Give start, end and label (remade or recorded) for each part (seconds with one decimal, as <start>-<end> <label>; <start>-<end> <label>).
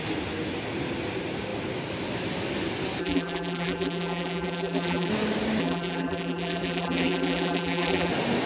0.0-3.0 recorded; 3.0-5.1 remade; 5.1-5.6 recorded; 5.6-8.1 remade; 8.1-8.5 recorded